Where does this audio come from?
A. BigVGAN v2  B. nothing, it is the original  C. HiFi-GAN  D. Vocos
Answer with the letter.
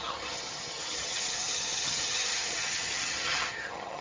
C